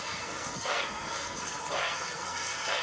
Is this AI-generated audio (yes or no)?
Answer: yes